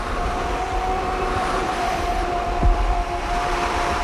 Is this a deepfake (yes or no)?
yes